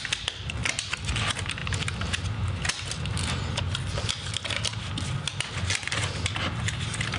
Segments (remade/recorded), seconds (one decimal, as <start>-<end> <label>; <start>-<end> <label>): 0.0-7.2 recorded